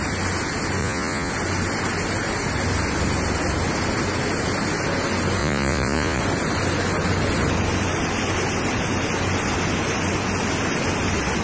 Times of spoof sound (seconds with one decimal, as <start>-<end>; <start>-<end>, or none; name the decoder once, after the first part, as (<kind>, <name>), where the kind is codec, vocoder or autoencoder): 0.8-1.3 (vocoder, Vocos); 5.4-6.2